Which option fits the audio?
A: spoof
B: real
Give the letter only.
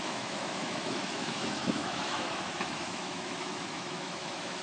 A